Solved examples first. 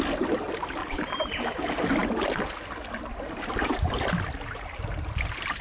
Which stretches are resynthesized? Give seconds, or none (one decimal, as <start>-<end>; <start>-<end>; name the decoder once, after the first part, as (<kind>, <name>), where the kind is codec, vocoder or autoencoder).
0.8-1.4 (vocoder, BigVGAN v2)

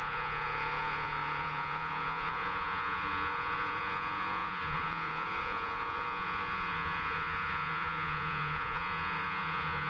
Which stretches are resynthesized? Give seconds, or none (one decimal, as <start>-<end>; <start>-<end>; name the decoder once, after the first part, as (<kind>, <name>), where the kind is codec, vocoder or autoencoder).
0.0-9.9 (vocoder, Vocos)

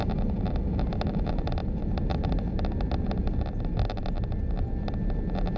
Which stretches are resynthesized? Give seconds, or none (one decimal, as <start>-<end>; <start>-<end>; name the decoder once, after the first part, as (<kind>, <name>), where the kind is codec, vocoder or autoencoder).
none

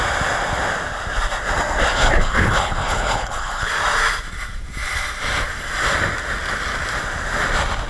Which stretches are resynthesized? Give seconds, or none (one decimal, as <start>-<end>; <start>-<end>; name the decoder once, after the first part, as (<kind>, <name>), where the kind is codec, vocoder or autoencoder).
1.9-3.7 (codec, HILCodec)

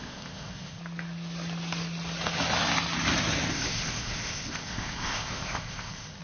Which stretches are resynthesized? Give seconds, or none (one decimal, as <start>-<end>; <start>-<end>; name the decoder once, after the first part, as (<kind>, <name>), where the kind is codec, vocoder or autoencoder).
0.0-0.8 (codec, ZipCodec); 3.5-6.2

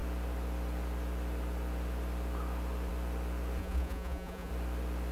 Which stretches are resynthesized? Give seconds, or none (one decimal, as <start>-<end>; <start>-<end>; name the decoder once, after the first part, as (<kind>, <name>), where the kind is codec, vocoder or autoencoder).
3.6-4.5 (vocoder, Vocos)